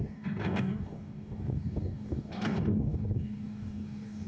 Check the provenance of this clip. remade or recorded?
remade